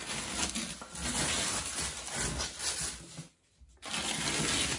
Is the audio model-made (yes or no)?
no